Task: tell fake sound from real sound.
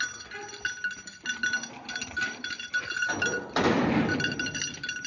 real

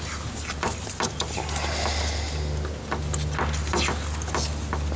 real